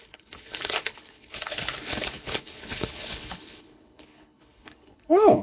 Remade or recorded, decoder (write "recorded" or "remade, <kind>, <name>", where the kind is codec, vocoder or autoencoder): remade, codec, HILCodec